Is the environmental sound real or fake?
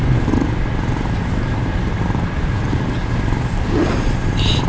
fake